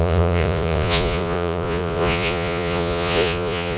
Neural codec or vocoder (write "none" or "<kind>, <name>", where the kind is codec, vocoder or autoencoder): vocoder, Vocos